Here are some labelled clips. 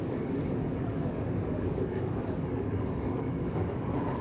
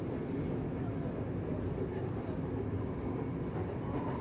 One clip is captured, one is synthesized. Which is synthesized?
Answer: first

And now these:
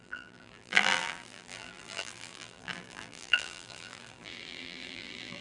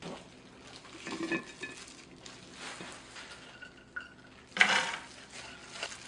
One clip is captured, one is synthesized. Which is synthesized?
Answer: first